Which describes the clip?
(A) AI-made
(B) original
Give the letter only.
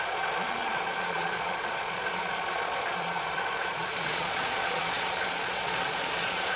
A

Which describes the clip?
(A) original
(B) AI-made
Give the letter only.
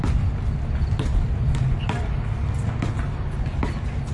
A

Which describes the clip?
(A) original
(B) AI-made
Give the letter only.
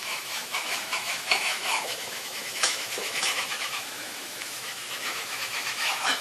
B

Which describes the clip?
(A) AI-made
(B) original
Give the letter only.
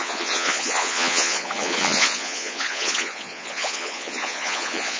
A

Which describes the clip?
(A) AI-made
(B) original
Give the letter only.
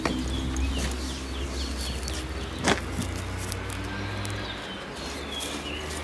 B